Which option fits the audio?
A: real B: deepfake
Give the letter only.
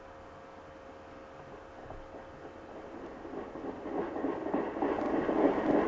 A